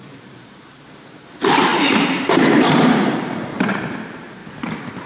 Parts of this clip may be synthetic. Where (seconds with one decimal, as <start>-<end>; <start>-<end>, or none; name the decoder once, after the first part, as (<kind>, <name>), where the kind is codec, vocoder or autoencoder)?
0.0-4.4 (vocoder, BigVGAN v2)